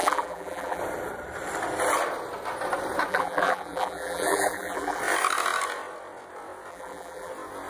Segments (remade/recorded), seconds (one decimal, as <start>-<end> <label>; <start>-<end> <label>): 0.0-0.8 remade; 0.8-3.1 recorded; 3.1-5.0 remade; 5.0-6.7 recorded; 6.7-7.3 remade; 7.3-7.7 recorded